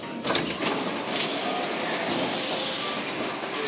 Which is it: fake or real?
real